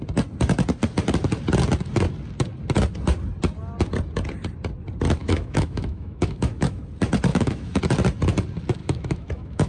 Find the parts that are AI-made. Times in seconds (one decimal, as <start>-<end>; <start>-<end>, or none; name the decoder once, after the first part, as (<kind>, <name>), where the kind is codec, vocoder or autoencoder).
5.2-6.8 (autoencoder, DAC-VAE); 7.3-7.8; 8.8-9.7